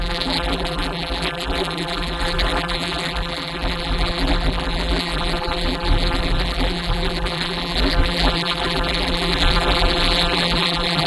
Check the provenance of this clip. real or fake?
fake